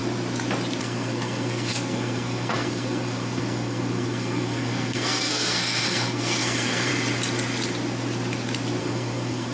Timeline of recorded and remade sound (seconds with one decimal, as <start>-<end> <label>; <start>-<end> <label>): 0.0-0.8 recorded; 0.8-6.9 remade; 6.9-8.8 recorded; 8.8-9.5 remade